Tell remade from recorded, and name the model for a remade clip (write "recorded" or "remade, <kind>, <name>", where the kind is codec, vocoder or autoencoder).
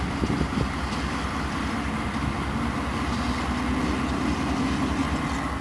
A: recorded